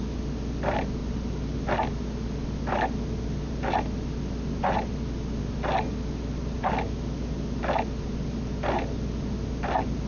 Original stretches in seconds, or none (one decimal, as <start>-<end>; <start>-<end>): 0.0-10.1